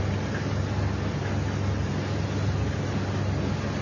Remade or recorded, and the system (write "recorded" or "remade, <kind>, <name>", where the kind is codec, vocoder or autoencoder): recorded